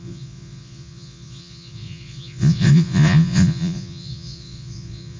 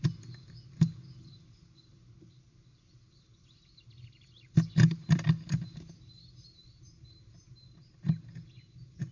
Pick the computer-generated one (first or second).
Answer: first